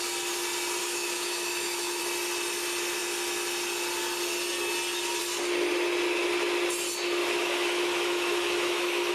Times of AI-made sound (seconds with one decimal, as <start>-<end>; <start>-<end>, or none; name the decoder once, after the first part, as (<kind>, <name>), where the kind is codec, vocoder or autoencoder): 0.8-2.0 (autoencoder, DAC-VAE); 7.2-9.1